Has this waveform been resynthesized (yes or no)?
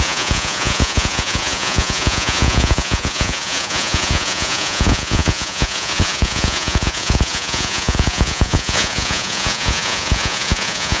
yes